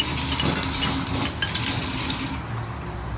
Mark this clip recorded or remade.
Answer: recorded